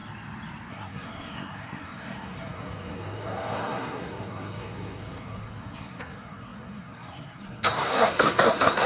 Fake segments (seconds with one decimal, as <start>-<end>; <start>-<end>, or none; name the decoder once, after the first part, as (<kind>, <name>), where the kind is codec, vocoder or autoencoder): 0.7-8.9 (codec, SNAC)